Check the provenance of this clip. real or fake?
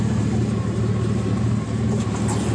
real